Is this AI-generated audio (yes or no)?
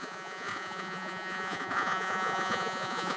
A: yes